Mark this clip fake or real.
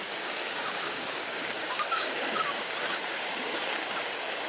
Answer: fake